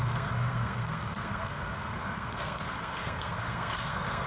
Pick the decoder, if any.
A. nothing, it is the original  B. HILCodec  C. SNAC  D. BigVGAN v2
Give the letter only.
C